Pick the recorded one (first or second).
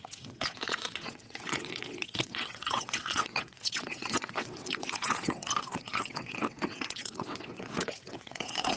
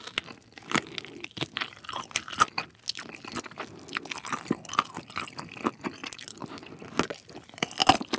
second